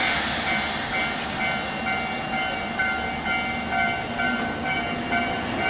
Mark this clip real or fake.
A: real